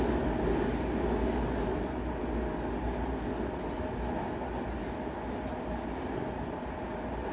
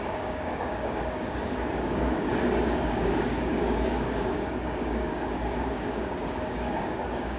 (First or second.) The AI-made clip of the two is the second